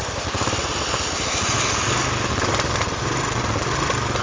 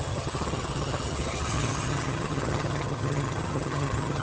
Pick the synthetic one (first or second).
second